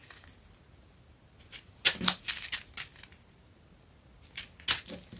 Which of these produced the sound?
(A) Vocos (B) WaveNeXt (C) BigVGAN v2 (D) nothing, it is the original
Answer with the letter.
D